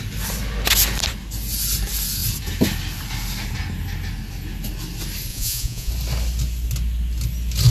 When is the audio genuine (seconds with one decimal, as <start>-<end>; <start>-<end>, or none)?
0.0-5.3; 5.9-7.7